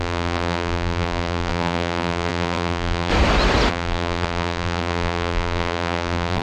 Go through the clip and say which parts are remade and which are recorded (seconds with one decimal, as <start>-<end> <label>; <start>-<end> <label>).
0.0-3.1 remade; 3.1-3.7 recorded; 3.7-6.4 remade